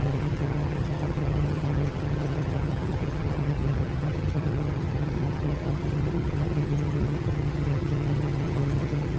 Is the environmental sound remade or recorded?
remade